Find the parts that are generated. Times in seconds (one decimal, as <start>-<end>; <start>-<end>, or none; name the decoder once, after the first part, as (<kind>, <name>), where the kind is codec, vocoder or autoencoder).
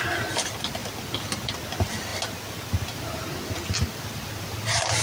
none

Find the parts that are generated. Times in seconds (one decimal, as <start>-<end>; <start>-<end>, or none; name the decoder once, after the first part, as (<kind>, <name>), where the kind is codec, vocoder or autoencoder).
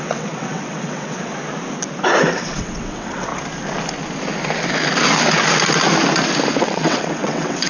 0.0-1.3 (vocoder, WaveNeXt); 2.2-3.3; 6.6-7.7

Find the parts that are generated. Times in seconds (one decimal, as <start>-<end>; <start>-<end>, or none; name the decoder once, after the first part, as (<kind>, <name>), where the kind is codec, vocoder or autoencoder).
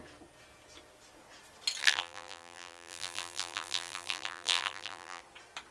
1.8-5.2 (vocoder, BigVGAN v2)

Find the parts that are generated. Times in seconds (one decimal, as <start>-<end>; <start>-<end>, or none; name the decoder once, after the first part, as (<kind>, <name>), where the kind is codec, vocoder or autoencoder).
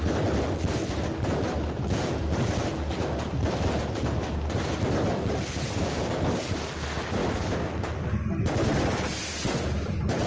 none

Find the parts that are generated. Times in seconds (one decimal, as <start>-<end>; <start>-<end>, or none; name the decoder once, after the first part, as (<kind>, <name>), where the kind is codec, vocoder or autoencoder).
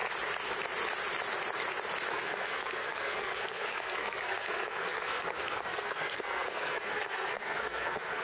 2.1-8.2 (codec, SNAC)